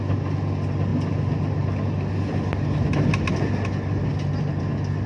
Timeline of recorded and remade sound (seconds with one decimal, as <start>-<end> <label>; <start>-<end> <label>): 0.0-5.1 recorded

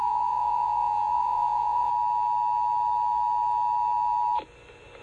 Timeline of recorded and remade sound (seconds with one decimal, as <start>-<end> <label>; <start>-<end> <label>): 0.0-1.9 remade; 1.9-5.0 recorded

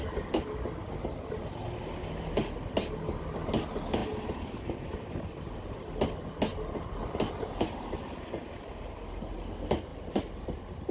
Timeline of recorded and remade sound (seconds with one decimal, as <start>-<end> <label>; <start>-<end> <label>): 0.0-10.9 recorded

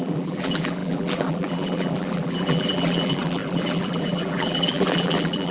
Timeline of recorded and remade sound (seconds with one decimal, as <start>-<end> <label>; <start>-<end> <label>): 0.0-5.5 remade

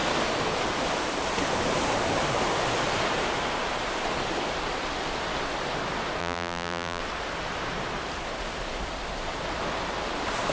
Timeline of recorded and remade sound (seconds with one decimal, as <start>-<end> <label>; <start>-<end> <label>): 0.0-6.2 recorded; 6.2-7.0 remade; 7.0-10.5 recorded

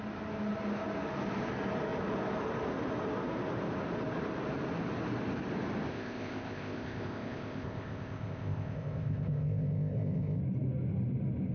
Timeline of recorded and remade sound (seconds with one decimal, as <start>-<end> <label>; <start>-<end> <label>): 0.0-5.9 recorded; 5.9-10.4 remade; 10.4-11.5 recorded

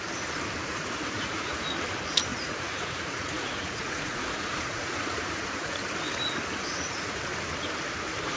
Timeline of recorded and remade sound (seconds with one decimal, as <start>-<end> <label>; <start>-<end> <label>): 0.0-0.6 recorded; 0.6-1.6 remade; 1.6-2.3 recorded; 2.3-5.8 remade; 5.8-6.7 recorded; 6.7-7.2 remade; 7.2-8.4 recorded

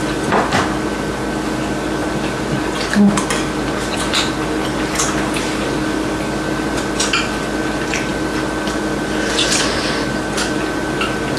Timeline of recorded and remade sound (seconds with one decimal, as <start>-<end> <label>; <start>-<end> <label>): 0.0-11.4 recorded